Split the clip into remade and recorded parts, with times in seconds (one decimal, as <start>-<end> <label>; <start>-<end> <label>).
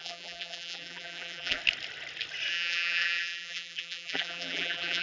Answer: 0.0-1.6 remade; 1.6-2.5 recorded; 2.5-5.0 remade